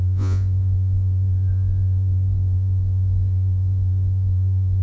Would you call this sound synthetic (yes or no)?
yes